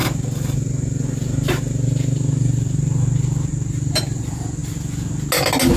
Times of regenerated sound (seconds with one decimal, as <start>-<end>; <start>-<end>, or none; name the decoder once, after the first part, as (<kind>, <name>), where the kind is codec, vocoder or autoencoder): none